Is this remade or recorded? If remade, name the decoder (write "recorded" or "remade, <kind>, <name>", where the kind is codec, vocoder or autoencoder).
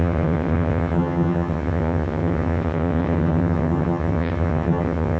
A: remade, vocoder, HiFi-GAN